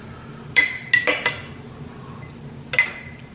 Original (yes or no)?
yes